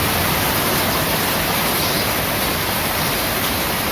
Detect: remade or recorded remade